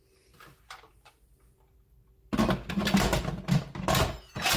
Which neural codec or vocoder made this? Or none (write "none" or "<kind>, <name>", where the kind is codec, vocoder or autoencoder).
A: none